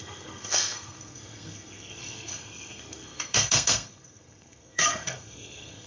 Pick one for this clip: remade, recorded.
remade